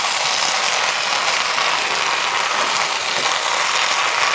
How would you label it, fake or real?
real